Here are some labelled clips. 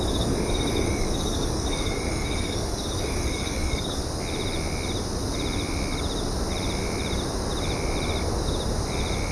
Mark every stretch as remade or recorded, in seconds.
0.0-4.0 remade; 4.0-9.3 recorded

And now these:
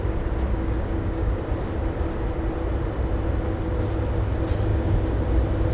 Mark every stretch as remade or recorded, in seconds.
0.0-0.5 recorded; 0.5-1.4 remade; 1.4-4.7 recorded; 4.7-5.2 remade; 5.2-5.7 recorded

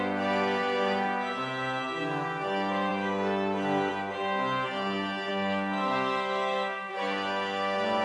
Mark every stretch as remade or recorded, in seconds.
0.0-5.3 recorded; 5.3-6.9 remade; 6.9-8.0 recorded

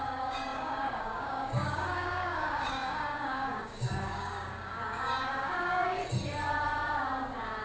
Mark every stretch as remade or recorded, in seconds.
0.0-6.0 remade; 6.0-7.6 recorded

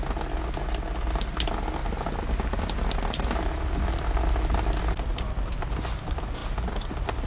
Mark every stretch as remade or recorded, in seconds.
0.0-7.3 recorded

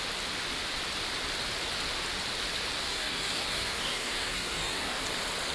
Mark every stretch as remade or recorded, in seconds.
0.0-2.8 recorded; 2.8-5.0 remade; 5.0-5.5 recorded

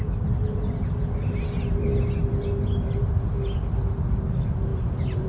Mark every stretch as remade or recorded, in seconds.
0.0-5.3 recorded